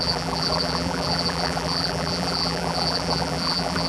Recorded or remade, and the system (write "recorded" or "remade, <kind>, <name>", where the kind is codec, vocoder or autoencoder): remade, vocoder, BigVGAN v2